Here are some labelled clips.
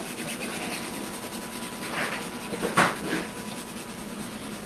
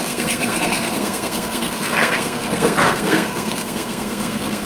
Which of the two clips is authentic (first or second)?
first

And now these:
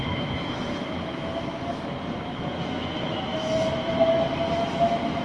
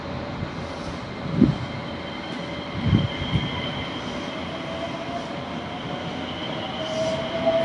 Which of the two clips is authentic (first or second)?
second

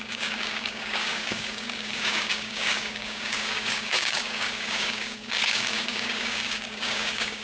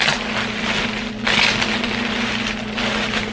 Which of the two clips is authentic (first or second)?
second